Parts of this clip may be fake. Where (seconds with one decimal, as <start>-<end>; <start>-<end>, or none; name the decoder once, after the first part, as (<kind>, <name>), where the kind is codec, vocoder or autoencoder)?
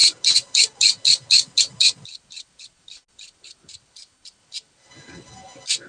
none